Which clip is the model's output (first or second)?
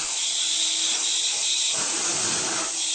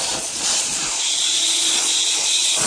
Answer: second